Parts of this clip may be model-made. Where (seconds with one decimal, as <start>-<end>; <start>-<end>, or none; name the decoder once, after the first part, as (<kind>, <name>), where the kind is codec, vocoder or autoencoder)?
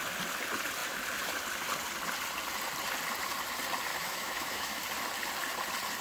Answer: 3.9-4.8 (autoencoder, DAC-VAE)